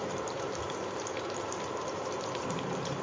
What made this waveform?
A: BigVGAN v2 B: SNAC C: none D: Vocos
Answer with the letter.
A